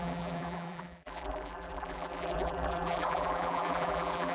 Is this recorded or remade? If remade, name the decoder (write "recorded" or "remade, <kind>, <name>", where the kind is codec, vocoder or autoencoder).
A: remade, vocoder, BigVGAN v2